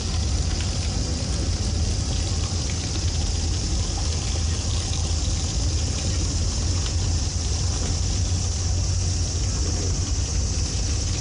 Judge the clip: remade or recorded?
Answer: recorded